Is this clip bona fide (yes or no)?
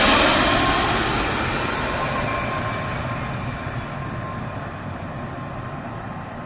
yes